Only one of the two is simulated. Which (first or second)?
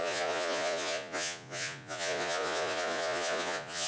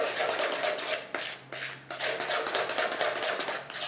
first